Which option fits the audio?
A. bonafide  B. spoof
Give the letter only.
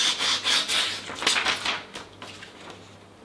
A